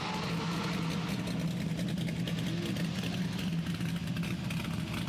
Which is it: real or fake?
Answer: real